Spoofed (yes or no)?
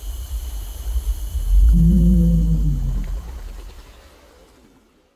no